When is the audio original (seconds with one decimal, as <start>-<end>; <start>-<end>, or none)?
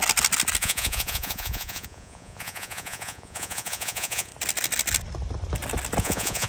0.0-0.6; 4.3-6.0